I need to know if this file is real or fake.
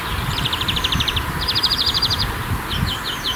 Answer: fake